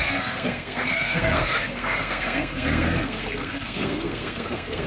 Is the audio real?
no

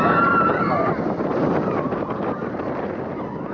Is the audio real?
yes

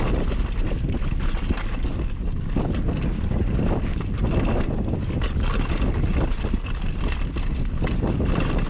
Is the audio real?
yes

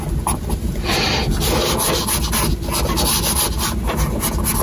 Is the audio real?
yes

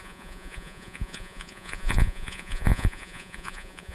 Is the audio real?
no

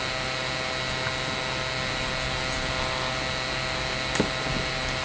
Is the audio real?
yes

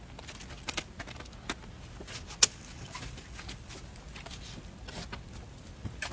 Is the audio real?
yes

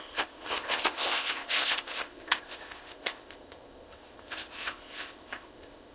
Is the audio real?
no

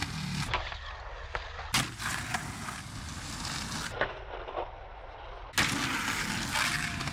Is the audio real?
yes